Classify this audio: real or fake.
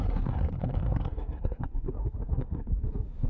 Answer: fake